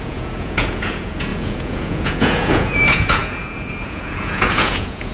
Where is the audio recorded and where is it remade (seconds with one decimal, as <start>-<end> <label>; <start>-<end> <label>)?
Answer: 0.0-5.1 remade